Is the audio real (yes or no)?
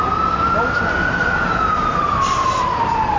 yes